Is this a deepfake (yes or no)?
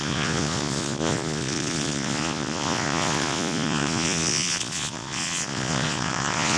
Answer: yes